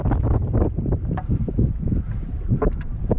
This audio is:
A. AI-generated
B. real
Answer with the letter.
B